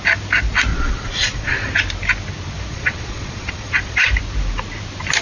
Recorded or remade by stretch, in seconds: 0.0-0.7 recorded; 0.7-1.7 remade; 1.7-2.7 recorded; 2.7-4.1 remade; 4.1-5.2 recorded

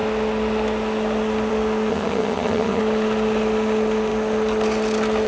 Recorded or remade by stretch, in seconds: 0.0-1.9 recorded; 1.9-2.8 remade; 2.8-5.3 recorded

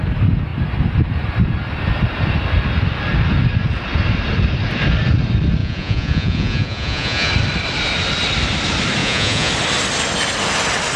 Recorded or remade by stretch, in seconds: 0.0-5.6 recorded; 5.6-7.3 remade; 7.3-9.0 recorded; 9.0-9.5 remade; 9.5-11.0 recorded

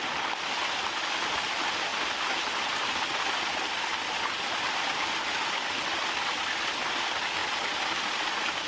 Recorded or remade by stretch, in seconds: 0.0-8.7 recorded

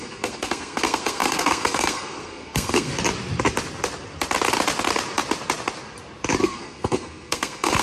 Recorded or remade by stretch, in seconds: 0.0-2.9 remade; 2.9-6.4 recorded; 6.4-7.8 remade